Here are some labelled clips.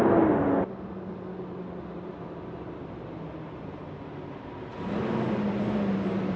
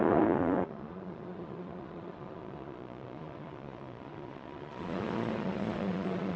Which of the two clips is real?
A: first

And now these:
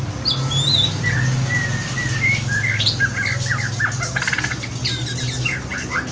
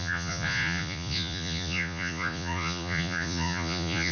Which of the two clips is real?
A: first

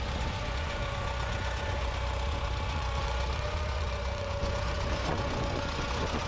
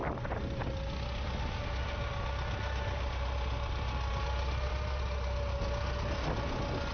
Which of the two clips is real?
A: second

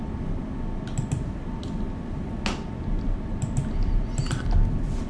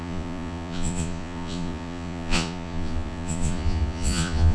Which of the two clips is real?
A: first